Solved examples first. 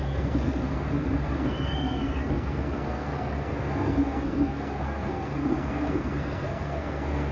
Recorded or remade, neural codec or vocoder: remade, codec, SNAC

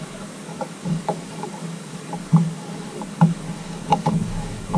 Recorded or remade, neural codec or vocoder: remade, codec, DAC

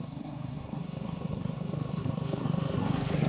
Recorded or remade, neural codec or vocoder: remade, codec, SNAC